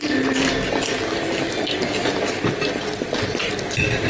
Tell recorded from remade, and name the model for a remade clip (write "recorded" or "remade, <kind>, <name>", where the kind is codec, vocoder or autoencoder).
recorded